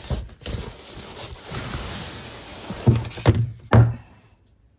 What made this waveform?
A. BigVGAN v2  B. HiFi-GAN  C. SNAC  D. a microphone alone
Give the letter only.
D